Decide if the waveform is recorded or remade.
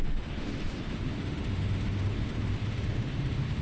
remade